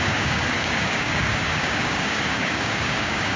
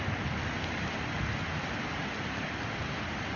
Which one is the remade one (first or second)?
first